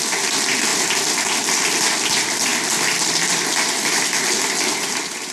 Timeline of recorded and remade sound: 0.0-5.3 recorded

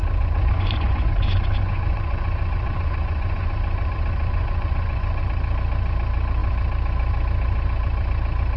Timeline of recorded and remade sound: 0.0-5.2 remade; 5.2-8.6 recorded

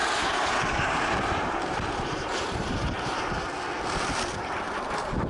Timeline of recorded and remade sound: 0.0-3.2 remade; 3.2-5.3 recorded